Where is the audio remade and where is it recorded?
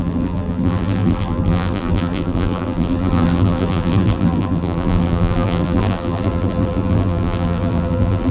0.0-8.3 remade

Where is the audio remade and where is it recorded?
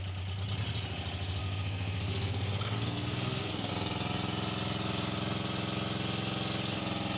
0.0-1.4 recorded; 1.4-3.7 remade; 3.7-7.2 recorded